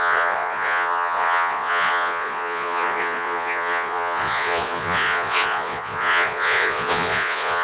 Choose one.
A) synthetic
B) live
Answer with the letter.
A